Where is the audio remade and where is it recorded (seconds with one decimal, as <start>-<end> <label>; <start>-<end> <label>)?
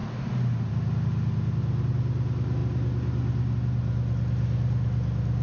0.0-5.4 recorded